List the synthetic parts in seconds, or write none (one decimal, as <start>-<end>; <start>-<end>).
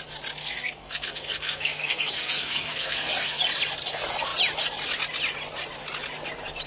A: 0.4-3.4